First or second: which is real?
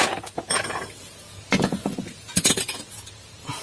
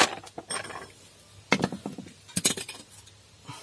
second